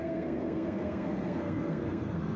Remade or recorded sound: remade